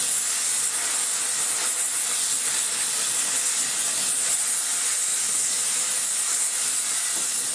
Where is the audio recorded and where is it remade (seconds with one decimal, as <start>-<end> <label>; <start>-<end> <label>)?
0.0-7.5 recorded